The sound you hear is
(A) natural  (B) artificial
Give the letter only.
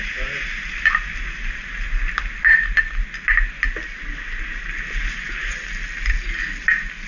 A